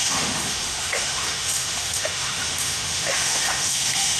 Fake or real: fake